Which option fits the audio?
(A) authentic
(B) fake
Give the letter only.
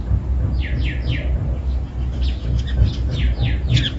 A